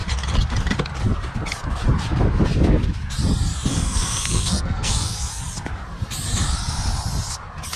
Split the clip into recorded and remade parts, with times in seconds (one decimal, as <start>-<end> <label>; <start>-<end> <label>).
0.0-3.7 recorded; 3.7-5.4 remade; 5.4-7.8 recorded